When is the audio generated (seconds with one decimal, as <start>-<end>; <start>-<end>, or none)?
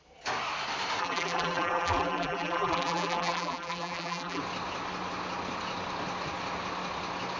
1.0-4.4